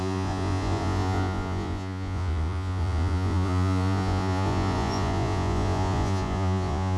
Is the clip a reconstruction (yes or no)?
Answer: yes